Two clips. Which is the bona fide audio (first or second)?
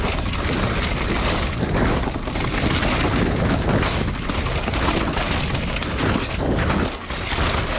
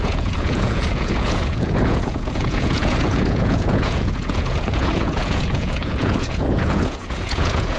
first